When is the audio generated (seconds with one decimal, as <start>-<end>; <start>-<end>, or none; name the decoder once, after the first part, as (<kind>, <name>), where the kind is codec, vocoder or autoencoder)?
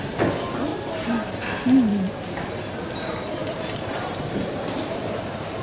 0.7-1.3 (vocoder, BigVGAN v2); 1.9-5.6